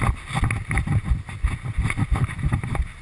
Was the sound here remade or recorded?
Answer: recorded